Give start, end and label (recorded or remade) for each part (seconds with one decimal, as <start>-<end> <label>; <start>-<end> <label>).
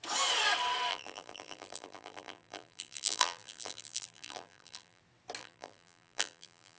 0.0-0.9 recorded; 0.9-5.0 remade; 5.0-5.4 recorded; 5.4-6.8 remade